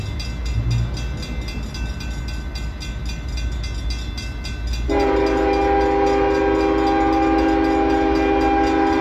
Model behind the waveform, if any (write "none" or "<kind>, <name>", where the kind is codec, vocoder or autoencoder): none